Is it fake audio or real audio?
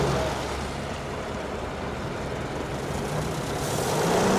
real